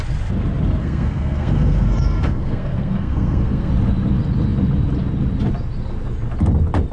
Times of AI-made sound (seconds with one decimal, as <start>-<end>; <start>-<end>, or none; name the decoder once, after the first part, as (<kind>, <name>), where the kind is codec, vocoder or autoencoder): 0.8-3.7 (codec, SNAC)